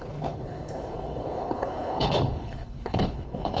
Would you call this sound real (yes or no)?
no